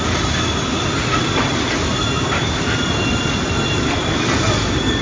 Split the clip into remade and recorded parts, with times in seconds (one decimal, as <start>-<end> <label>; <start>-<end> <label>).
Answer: 0.0-1.2 recorded; 1.2-4.2 remade; 4.2-5.0 recorded